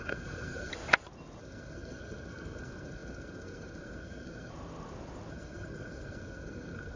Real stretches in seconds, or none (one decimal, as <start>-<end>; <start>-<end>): 0.7-1.4; 4.5-5.3